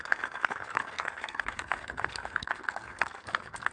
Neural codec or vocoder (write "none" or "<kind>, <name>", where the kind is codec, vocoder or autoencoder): codec, SNAC